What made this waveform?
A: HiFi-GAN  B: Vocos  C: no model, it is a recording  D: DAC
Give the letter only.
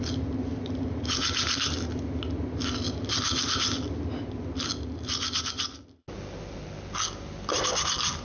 C